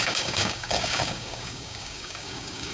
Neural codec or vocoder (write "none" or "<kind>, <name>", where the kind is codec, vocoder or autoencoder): codec, DAC